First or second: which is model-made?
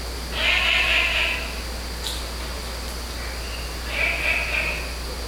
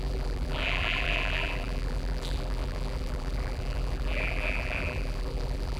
second